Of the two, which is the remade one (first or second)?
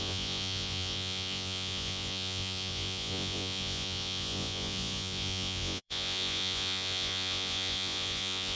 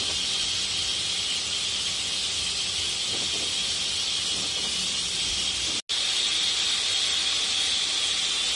first